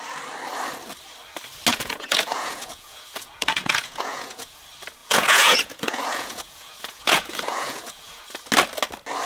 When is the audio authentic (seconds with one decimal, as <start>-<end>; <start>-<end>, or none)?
0.0-1.7; 4.6-5.0; 8.2-9.3